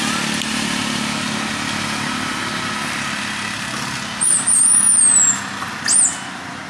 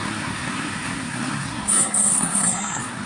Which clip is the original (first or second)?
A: first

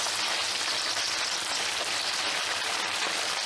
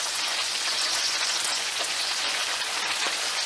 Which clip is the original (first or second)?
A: first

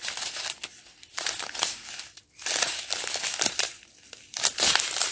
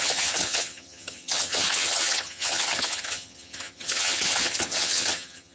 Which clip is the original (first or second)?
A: first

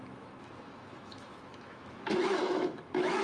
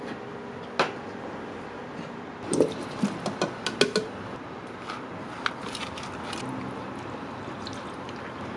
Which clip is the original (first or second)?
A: second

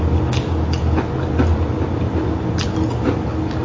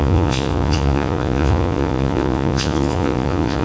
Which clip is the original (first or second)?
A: first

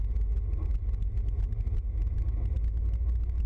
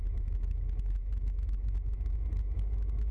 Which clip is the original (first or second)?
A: first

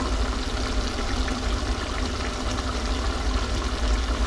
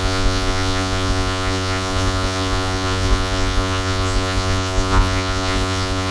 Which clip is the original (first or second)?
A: first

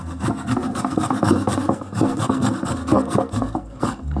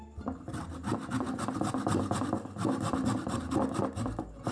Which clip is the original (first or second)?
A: second